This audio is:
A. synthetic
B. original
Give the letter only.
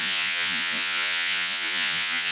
A